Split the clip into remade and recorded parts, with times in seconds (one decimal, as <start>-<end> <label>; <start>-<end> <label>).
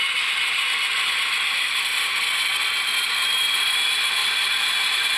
0.0-2.5 remade; 2.5-4.2 recorded; 4.2-5.2 remade